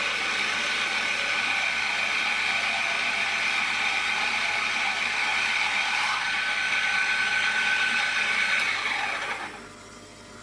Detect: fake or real real